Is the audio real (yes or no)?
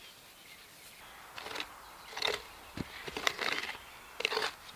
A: yes